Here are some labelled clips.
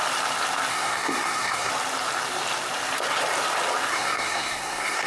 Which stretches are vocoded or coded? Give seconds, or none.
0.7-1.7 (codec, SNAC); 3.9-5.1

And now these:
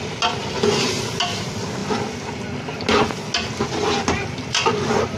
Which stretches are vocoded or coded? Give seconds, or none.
none